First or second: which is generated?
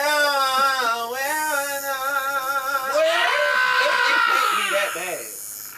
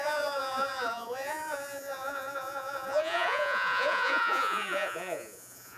second